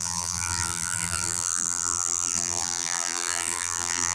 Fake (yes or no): yes